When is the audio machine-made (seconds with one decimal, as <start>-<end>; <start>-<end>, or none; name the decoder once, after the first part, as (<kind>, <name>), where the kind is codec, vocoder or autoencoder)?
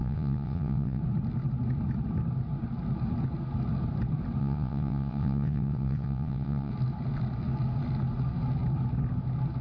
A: 0.0-1.0 (vocoder, WaveNeXt); 4.4-6.7